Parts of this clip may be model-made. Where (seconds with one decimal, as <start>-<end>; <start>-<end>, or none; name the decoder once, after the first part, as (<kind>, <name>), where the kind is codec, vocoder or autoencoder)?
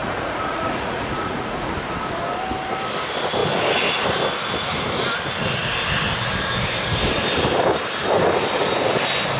0.0-1.7 (vocoder, Vocos)